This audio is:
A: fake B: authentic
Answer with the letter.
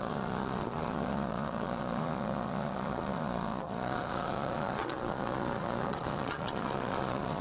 A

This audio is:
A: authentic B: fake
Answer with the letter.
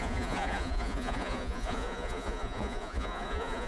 B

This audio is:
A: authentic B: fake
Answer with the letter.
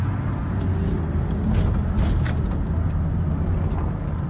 A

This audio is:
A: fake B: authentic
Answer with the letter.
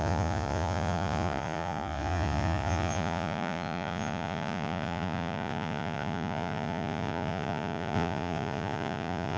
A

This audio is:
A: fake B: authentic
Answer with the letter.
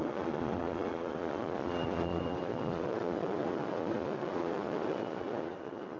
A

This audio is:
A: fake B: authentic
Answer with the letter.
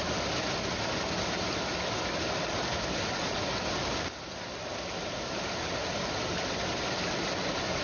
B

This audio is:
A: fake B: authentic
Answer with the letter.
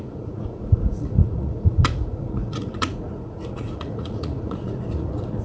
A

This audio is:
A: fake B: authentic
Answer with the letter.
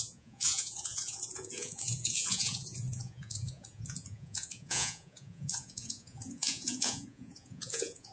A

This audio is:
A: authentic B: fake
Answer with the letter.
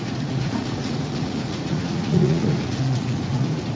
B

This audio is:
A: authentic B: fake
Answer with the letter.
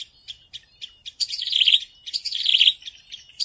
A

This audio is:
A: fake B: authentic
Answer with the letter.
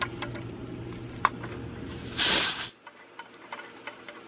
B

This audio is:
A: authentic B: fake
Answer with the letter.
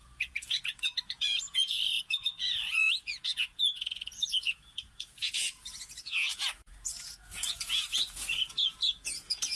B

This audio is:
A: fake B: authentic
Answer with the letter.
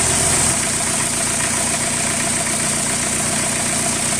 B